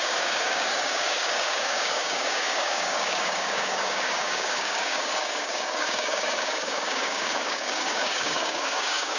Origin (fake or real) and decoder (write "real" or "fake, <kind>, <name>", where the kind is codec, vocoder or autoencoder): fake, codec, DAC